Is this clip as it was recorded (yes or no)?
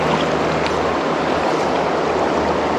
yes